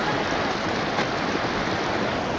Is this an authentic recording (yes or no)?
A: yes